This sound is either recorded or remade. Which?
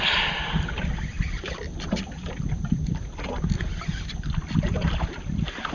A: remade